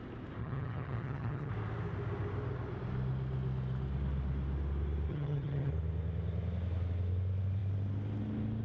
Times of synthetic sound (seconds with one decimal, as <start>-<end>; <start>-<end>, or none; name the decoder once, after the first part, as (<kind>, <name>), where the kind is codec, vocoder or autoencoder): 0.4-1.5 (vocoder, HiFi-GAN); 5.1-5.7